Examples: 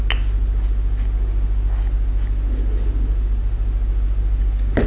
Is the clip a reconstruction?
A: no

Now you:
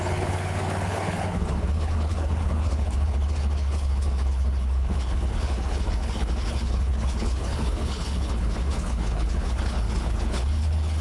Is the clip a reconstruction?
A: yes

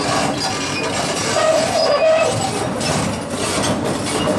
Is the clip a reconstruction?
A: no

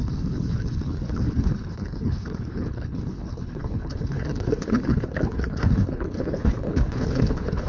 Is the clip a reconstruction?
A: yes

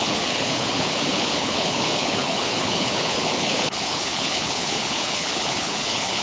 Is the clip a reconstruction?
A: yes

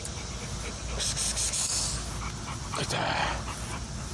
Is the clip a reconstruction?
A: no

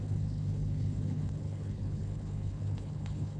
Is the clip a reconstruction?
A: yes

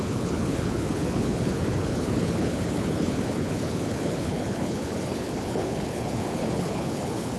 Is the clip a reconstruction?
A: yes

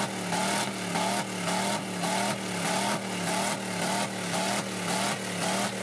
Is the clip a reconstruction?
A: no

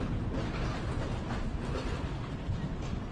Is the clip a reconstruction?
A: no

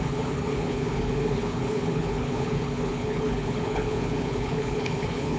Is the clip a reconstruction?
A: yes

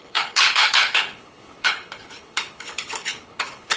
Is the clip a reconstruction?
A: yes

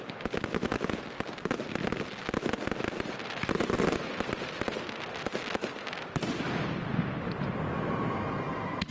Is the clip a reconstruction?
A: no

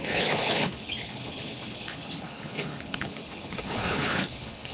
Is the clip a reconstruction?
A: yes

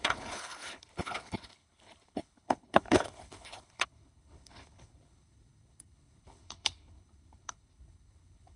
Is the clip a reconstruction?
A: yes